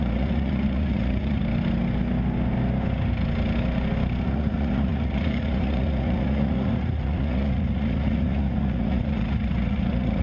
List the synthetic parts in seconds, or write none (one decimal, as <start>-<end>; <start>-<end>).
0.0-1.4; 4.2-10.2